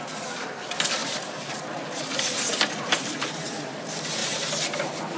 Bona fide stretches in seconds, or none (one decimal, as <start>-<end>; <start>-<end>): 0.0-5.2